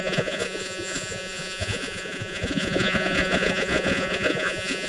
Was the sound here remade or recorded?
remade